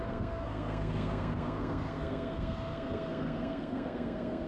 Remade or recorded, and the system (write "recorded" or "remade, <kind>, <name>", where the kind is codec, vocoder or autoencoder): remade, codec, SNAC